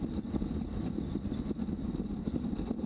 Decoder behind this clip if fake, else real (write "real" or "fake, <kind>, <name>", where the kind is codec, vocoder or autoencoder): real